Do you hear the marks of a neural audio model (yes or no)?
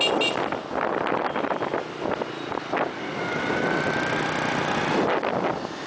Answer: no